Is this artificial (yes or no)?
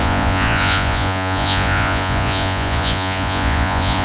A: yes